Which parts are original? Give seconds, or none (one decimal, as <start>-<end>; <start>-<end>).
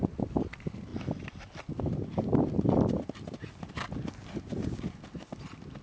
0.0-5.8